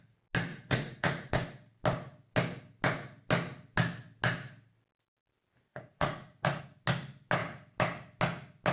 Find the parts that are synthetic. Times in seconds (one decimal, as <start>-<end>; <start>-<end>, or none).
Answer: 0.5-1.3; 5.7-6.6